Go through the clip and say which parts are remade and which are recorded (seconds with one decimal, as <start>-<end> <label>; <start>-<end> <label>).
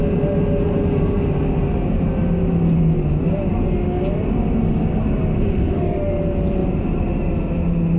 0.0-5.3 recorded; 5.3-6.1 remade; 6.1-8.0 recorded